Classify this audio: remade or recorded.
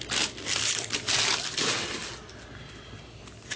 recorded